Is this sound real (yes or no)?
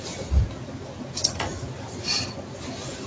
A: no